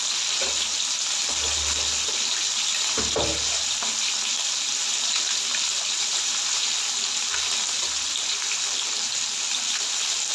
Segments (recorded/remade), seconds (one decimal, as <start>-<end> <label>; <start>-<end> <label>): 0.0-5.7 recorded; 5.7-6.4 remade; 6.4-10.3 recorded